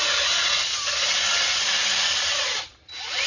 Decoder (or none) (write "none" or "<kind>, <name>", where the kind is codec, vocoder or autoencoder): none